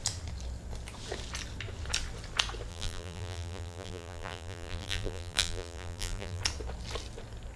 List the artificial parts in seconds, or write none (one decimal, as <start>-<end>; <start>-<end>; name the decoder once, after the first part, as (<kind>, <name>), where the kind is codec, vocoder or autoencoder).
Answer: 2.7-6.4 (vocoder, BigVGAN v2)